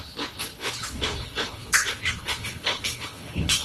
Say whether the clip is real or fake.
fake